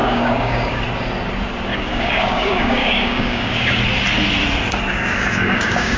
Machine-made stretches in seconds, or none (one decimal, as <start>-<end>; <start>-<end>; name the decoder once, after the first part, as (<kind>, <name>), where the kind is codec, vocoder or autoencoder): 0.0-0.8 (codec, DAC); 1.7-3.8; 4.9-6.0